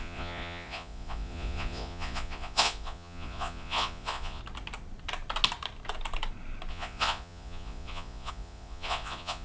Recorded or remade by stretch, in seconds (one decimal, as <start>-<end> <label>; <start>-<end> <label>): 0.0-4.4 remade; 4.4-6.7 recorded; 6.7-9.4 remade